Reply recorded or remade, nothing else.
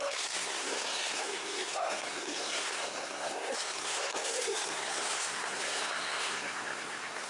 remade